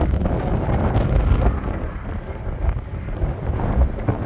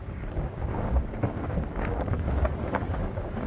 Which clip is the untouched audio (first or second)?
first